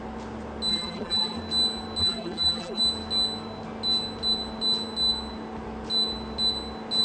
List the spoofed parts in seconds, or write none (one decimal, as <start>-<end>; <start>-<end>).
0.7-1.4; 2.0-2.8